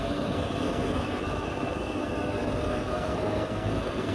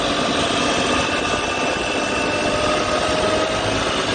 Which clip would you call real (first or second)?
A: second